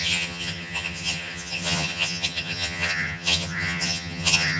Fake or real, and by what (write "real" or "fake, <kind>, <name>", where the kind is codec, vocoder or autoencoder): fake, vocoder, HiFi-GAN